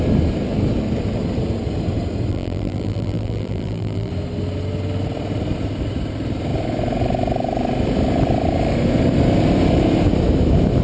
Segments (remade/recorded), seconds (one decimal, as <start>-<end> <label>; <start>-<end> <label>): 0.0-2.3 recorded; 2.3-4.1 remade; 4.1-10.8 recorded